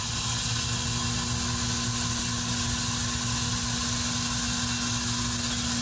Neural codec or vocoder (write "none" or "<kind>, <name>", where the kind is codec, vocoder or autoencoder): none